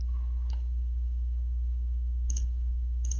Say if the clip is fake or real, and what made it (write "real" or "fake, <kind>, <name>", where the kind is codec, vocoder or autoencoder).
fake, codec, HILCodec